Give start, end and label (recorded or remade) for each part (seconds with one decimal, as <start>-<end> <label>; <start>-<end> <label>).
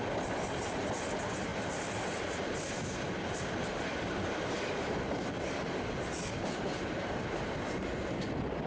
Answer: 0.0-8.7 recorded